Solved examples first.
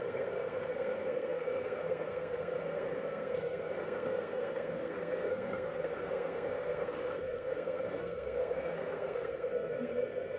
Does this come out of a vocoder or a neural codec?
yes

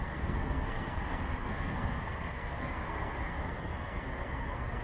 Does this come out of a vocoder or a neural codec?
yes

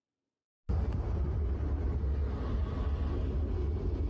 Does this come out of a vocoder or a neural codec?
no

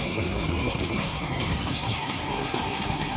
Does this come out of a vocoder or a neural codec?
yes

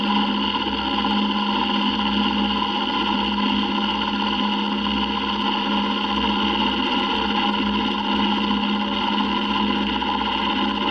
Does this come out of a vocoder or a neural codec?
no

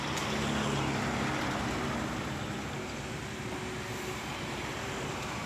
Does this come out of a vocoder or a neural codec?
no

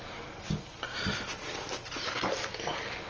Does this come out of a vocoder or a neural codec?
no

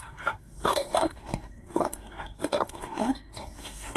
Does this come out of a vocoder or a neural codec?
yes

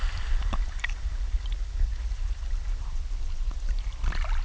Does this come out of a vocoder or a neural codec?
no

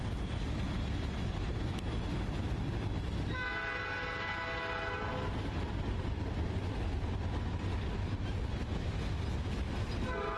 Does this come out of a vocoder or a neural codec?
no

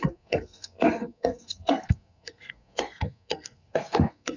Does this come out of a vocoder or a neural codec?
yes